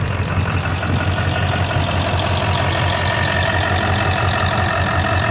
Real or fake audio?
real